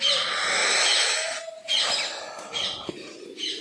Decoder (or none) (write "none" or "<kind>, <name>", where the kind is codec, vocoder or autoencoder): none